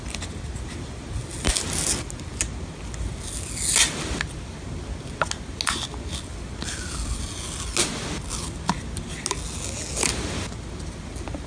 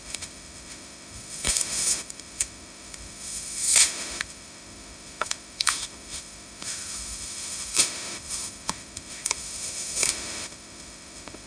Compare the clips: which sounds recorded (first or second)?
first